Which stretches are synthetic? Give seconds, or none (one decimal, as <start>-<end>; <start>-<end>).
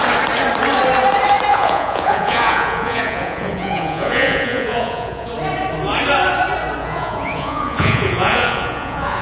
1.5-5.3; 6.8-9.2